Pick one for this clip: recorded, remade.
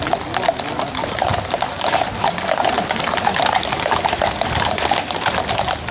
recorded